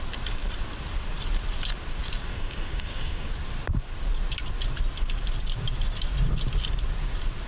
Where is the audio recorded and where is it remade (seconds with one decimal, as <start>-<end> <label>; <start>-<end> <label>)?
0.0-2.3 recorded; 2.3-3.3 remade; 3.3-7.5 recorded